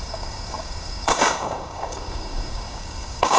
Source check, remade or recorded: remade